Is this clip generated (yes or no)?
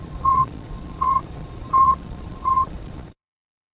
yes